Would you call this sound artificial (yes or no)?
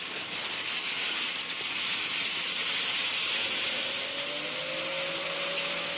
no